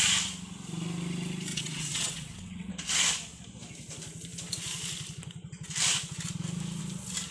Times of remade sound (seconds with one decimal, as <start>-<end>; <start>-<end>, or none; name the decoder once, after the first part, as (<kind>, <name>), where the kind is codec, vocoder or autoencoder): 1.5-2.7 (vocoder, WaveNeXt)